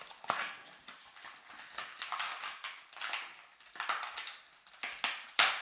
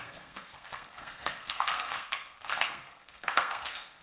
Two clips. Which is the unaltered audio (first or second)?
first